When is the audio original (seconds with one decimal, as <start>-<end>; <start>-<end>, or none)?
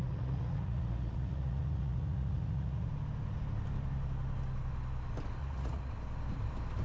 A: 2.9-5.4; 5.9-6.8